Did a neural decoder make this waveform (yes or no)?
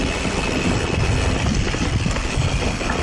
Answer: no